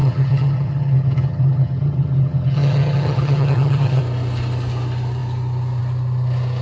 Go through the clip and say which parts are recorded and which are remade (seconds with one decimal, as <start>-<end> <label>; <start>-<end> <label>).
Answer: 0.0-4.0 remade; 4.0-6.6 recorded